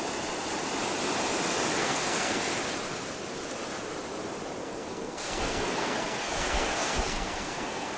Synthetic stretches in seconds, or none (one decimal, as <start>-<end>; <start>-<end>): 1.8-2.5; 4.6-8.0